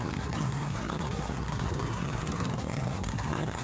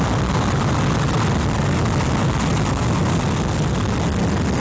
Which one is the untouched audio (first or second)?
second